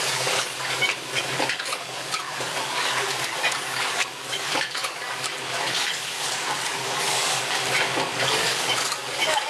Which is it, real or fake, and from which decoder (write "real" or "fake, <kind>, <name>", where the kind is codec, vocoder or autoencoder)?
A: fake, codec, DAC